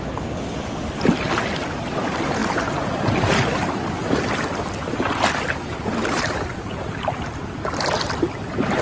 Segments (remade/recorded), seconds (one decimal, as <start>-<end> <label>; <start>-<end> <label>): 0.0-8.8 recorded